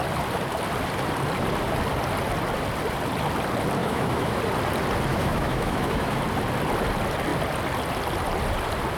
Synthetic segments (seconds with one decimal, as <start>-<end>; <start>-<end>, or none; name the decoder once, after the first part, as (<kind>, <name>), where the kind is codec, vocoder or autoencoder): 3.8-4.4 (autoencoder, DAC-VAE); 5.1-6.2